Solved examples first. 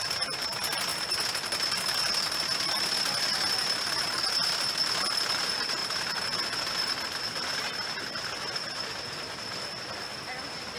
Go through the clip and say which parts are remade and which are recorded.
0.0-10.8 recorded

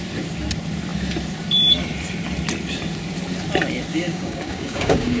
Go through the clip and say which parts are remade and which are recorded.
0.0-3.9 recorded; 3.9-5.2 remade

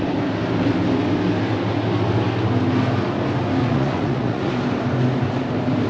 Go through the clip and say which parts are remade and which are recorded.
0.0-3.6 recorded; 3.6-4.5 remade; 4.5-5.9 recorded

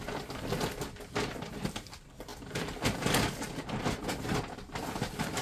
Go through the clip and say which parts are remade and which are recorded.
0.0-5.4 recorded